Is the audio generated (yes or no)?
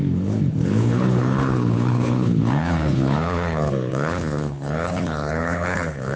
yes